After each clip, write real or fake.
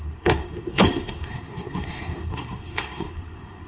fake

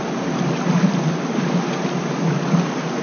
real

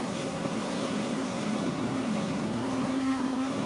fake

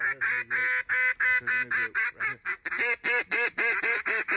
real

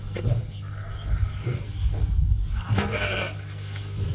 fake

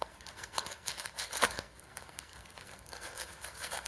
fake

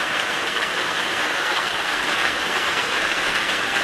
fake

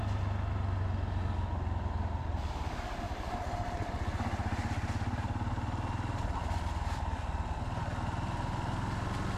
real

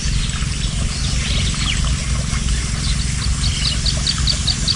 real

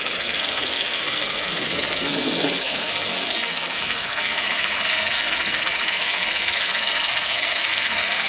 fake